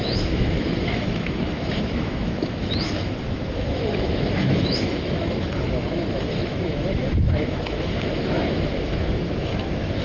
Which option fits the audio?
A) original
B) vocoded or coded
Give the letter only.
B